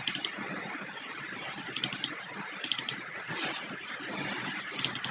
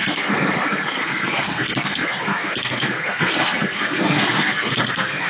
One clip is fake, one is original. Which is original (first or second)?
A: first